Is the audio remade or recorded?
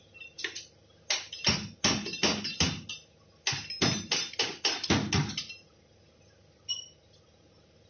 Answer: recorded